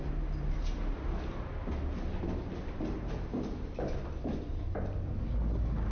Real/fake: real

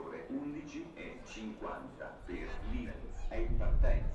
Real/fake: real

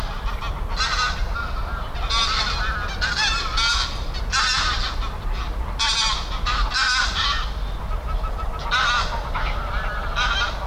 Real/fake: real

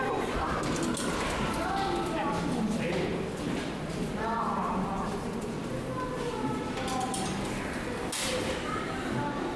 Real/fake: real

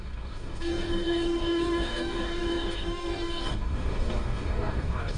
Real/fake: fake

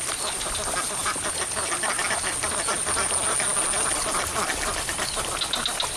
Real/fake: real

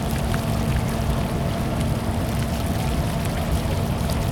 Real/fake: real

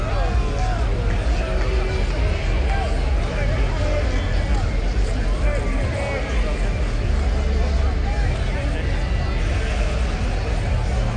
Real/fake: real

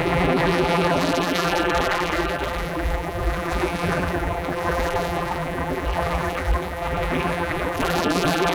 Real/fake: fake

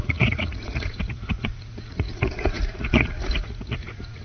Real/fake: fake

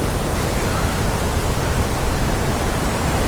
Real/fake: fake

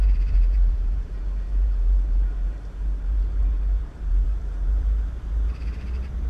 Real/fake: fake